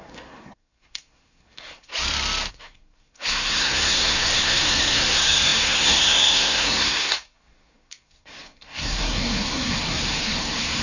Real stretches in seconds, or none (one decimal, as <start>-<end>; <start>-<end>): 1.9-2.5